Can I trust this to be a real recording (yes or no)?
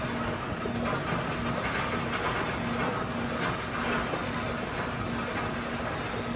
yes